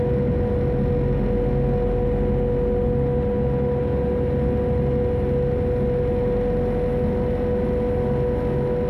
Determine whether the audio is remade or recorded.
recorded